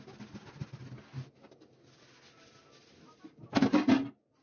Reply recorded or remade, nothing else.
recorded